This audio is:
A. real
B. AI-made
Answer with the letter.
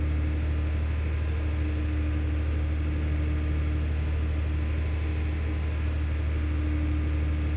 A